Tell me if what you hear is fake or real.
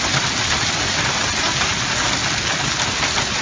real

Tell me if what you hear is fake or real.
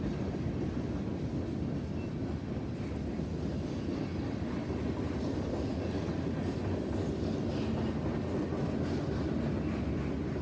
real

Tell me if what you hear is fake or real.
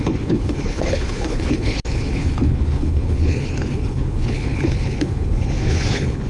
fake